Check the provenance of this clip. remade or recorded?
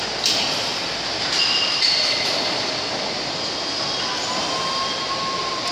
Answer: recorded